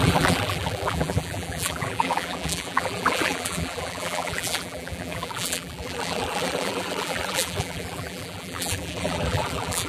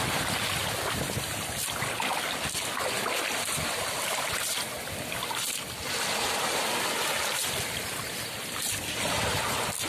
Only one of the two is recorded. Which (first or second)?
second